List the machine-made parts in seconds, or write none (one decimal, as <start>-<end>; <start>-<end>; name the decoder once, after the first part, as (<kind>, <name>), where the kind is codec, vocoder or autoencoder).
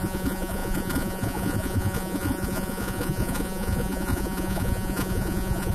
0.0-5.7 (vocoder, Vocos)